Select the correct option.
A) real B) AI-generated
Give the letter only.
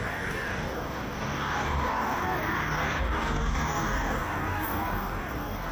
B